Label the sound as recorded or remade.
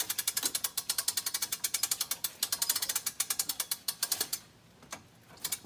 recorded